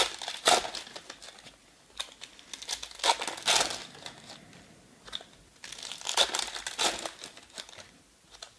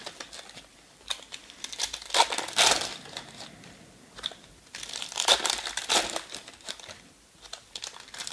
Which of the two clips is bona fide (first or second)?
first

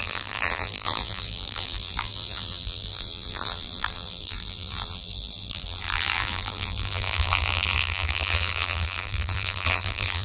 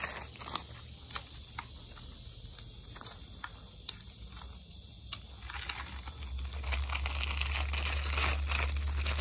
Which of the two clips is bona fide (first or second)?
second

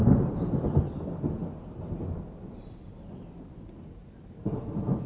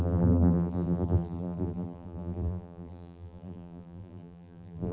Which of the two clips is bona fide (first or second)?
first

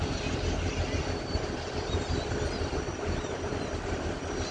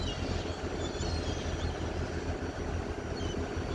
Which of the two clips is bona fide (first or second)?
second